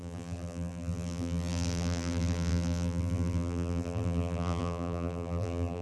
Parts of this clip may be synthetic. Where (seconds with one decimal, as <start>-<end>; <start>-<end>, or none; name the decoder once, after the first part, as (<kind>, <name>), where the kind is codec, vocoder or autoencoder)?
0.0-5.8 (vocoder, BigVGAN v2)

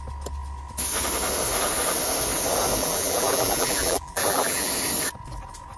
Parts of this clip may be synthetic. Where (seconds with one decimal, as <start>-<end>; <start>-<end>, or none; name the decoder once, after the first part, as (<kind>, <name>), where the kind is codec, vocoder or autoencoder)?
2.8-4.7 (vocoder, BigVGAN v2)